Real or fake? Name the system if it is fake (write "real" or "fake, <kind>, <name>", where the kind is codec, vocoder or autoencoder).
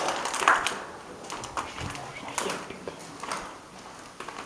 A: real